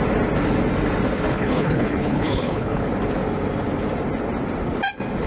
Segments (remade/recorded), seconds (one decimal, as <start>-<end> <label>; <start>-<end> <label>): 0.0-1.3 recorded; 1.3-2.8 remade; 2.8-5.3 recorded

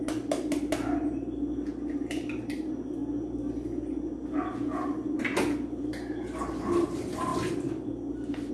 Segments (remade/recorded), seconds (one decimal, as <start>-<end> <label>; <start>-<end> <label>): 0.0-8.5 recorded

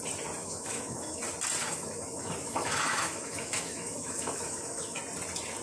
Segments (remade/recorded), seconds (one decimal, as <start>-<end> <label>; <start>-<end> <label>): 0.0-0.4 recorded; 0.4-1.2 remade; 1.2-1.6 recorded; 1.6-5.0 remade; 5.0-5.6 recorded

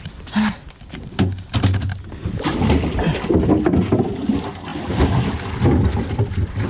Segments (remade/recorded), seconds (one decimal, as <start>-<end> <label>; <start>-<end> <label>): 0.0-6.7 recorded

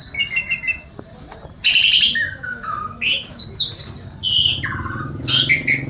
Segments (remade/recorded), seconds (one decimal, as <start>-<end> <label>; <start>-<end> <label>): 0.0-2.1 recorded; 2.1-3.4 remade; 3.4-5.9 recorded

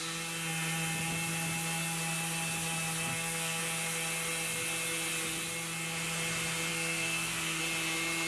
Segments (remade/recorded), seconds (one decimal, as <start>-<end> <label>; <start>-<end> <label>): 0.0-3.1 recorded; 3.1-3.6 remade; 3.6-6.7 recorded; 6.7-7.6 remade; 7.6-8.3 recorded